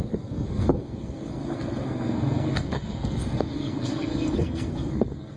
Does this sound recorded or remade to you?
remade